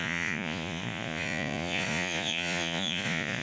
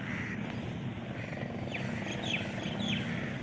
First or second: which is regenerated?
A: first